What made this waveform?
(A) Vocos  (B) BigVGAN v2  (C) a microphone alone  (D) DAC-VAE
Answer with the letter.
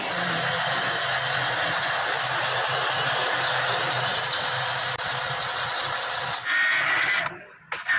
C